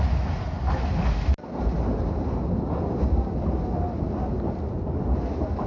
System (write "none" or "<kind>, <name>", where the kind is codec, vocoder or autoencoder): none